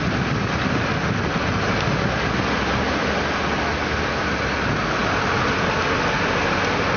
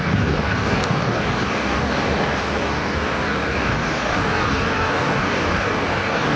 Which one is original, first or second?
first